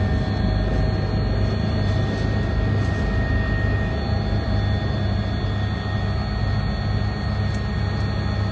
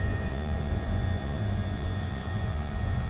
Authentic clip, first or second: first